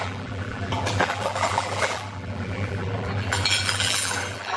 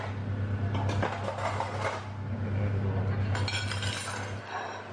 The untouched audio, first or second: second